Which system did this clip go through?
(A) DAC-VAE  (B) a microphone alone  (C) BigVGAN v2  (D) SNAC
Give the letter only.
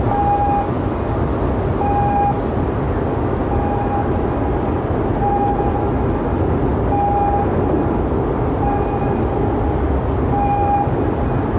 B